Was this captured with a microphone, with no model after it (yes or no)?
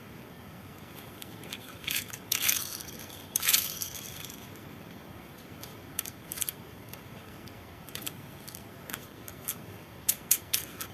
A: no